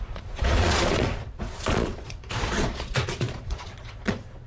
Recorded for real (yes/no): no